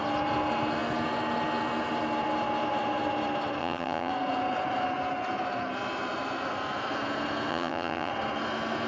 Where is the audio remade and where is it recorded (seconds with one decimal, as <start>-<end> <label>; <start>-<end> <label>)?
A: 0.0-3.6 recorded; 3.6-4.1 remade; 4.1-7.5 recorded; 7.5-8.1 remade; 8.1-8.9 recorded